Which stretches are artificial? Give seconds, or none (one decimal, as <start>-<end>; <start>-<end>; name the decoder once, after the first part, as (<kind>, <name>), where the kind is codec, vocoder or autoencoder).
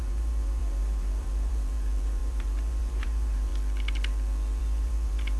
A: 0.0-3.5 (vocoder, BigVGAN v2); 4.6-5.4